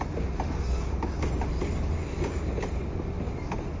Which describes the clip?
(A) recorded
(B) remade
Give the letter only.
A